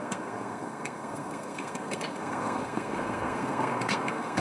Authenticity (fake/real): fake